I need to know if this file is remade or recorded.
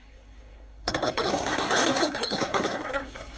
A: remade